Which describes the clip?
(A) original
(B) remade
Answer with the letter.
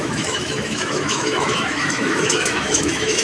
B